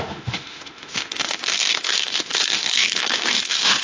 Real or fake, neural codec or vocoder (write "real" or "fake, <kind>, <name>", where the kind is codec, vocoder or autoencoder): fake, autoencoder, DAC-VAE